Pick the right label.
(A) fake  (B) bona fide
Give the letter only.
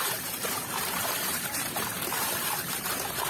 A